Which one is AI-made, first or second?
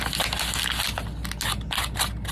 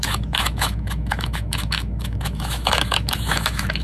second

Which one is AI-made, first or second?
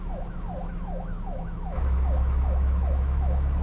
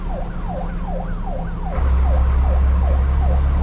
first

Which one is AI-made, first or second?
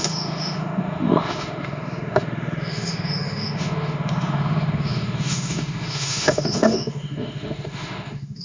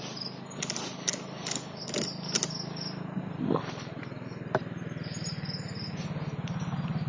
first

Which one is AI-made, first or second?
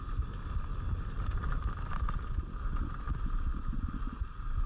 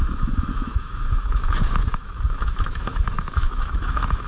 second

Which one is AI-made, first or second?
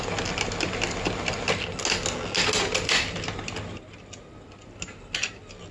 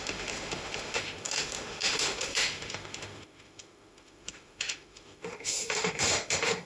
second